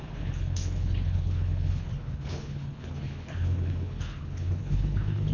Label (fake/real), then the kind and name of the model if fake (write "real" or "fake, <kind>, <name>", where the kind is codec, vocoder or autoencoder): fake, codec, HILCodec